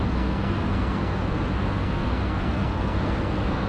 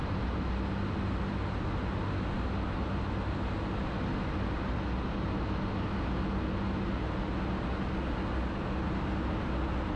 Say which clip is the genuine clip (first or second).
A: second